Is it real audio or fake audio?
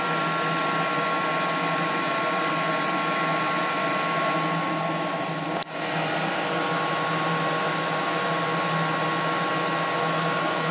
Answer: real